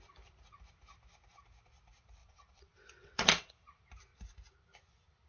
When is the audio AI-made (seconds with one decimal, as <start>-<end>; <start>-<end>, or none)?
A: 2.2-3.5